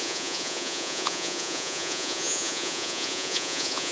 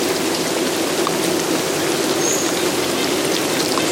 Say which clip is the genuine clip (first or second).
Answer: second